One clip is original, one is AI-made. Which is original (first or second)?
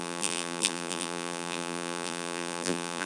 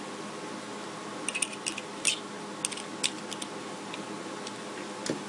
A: second